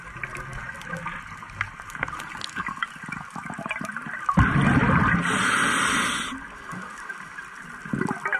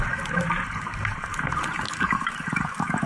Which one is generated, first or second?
second